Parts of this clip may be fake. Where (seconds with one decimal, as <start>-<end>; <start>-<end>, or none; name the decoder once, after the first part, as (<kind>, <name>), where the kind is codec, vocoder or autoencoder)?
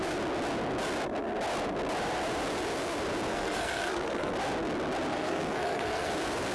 3.3-4.3 (codec, SNAC); 5.1-6.1